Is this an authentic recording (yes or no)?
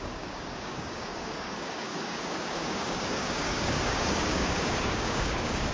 no